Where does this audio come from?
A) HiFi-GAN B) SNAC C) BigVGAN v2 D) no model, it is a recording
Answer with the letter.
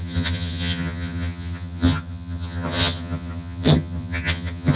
A